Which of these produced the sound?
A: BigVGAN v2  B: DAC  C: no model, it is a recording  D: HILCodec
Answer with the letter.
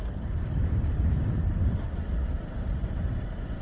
C